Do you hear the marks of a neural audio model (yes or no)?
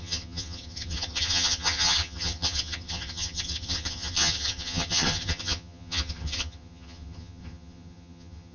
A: yes